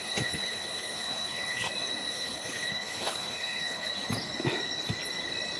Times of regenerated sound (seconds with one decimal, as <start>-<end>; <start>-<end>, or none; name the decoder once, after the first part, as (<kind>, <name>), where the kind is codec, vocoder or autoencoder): 0.0-1.6 (codec, HILCodec); 2.1-3.9